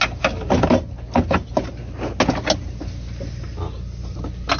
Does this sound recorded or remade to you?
recorded